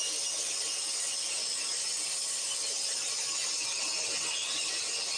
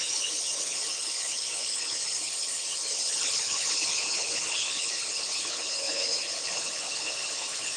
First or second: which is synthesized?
second